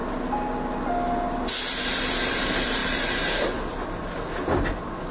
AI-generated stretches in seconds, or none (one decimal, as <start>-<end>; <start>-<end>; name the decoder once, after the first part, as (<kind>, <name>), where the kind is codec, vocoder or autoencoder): 1.6-2.8 (vocoder, BigVGAN v2); 4.6-5.1